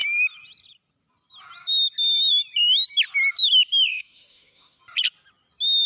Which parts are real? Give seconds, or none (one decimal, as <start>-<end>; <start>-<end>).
0.0-3.9; 4.8-5.9